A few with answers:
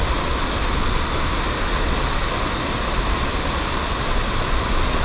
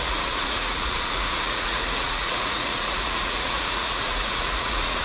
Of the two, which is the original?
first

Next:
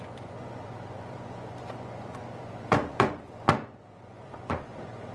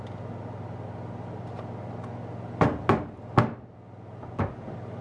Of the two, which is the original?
second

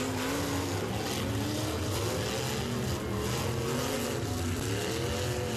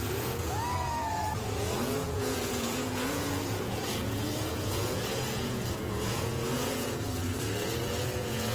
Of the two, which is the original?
first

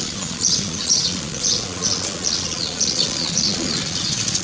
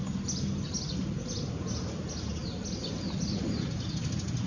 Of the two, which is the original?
second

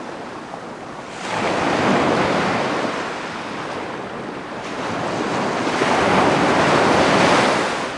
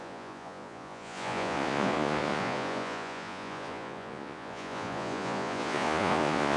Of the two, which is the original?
first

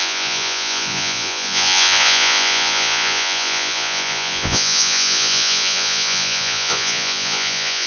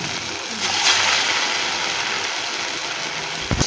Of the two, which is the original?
second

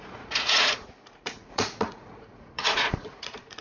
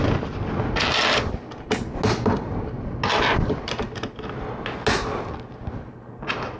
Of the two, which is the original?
second